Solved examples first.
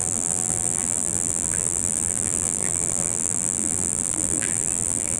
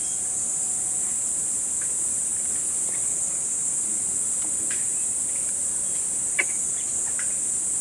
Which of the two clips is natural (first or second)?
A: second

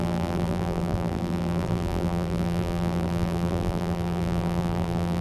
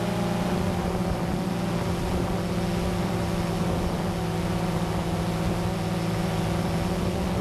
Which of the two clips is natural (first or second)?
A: second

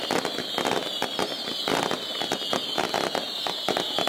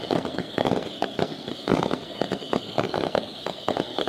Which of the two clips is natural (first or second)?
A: first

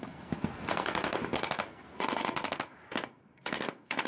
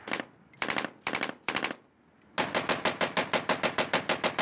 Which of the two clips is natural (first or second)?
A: second